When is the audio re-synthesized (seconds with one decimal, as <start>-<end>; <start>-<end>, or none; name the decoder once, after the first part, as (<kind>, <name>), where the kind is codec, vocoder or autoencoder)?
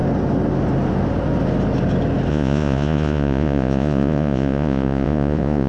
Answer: 2.3-5.7 (vocoder, Vocos)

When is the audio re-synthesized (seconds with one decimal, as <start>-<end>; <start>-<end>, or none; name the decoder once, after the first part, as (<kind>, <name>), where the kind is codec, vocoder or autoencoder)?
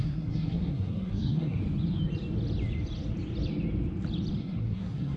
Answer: 0.0-1.6 (codec, SNAC); 4.4-5.2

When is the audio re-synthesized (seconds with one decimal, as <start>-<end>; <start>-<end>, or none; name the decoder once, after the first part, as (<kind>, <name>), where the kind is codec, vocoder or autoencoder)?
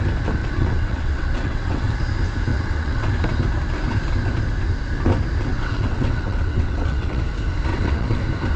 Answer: 0.4-1.9 (vocoder, WaveNeXt); 2.5-3.1; 5.5-7.2; 7.7-8.2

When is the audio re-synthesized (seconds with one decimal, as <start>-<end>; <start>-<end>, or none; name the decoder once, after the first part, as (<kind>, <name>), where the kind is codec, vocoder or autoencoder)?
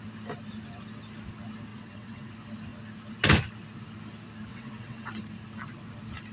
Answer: 1.7-2.3 (vocoder, WaveNeXt); 4.5-5.1